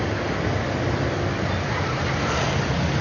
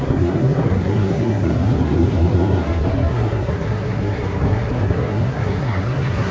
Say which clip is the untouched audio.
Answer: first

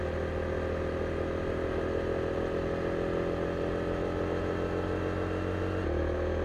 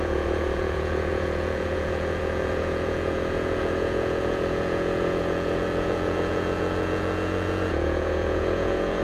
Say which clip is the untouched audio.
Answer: first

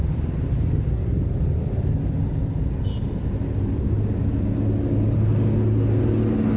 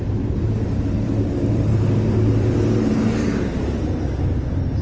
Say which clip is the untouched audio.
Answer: first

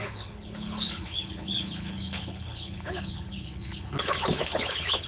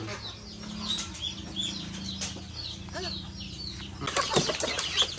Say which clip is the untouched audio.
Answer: second